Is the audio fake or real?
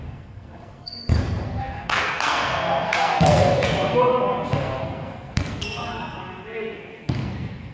fake